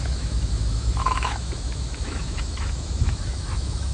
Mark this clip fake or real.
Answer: fake